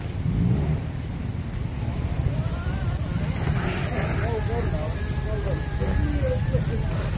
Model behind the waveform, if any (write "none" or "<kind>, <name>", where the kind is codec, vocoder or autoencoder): none